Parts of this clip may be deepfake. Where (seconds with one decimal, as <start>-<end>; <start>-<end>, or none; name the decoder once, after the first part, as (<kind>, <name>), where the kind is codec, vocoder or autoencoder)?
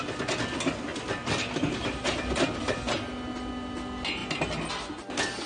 none